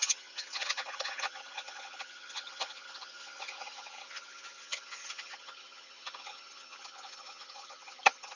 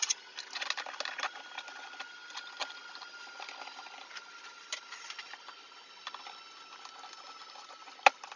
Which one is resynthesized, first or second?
first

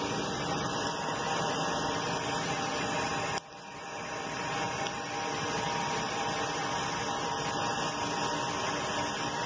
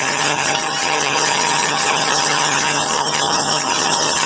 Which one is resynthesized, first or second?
second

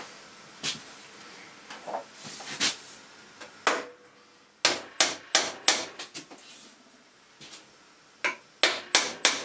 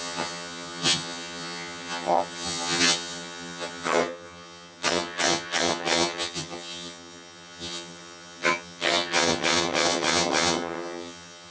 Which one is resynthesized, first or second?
second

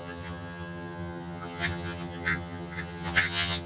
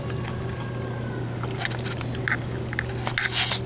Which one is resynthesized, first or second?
first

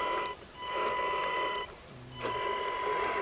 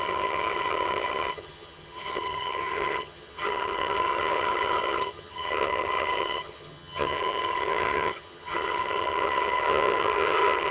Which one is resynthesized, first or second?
second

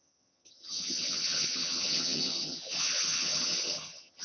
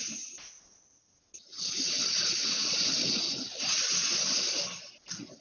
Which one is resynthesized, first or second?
first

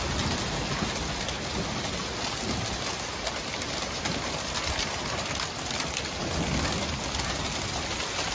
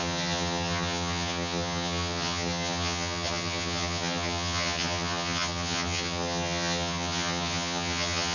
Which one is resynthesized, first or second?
second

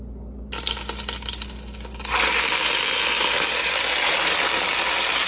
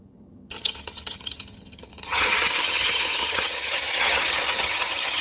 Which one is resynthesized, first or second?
second